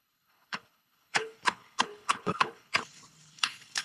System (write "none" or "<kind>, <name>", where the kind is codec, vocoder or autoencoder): codec, HILCodec